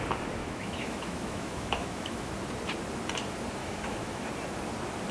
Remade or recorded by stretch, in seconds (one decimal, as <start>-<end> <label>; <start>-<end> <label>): 0.0-0.4 recorded; 0.4-2.3 remade; 2.3-3.6 recorded; 3.6-4.2 remade; 4.2-5.1 recorded